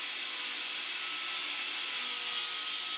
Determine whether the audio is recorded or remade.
recorded